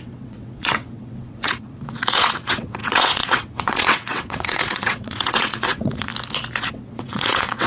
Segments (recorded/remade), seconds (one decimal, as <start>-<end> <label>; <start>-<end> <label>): 0.0-6.1 remade; 6.1-6.7 recorded; 6.7-7.7 remade